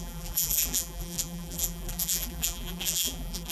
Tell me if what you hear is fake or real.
fake